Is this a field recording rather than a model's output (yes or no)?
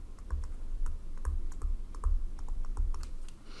yes